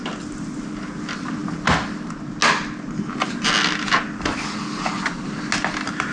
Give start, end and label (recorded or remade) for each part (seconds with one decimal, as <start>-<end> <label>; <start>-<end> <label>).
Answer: 0.0-6.1 recorded